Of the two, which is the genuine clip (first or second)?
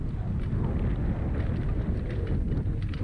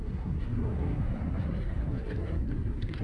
first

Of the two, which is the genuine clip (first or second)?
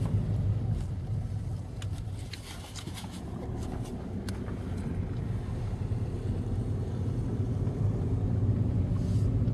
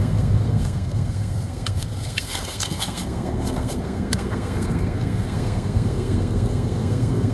first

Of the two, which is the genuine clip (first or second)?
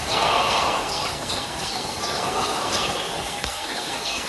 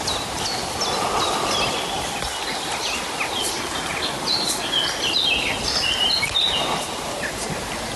second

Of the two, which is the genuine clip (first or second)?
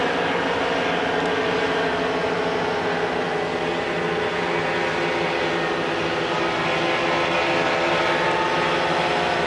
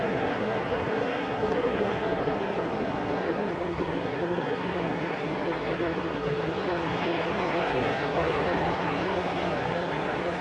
first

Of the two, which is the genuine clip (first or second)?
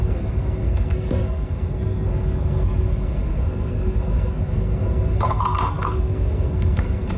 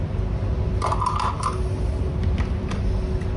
second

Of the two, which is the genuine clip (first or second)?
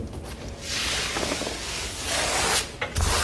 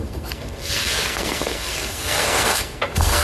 first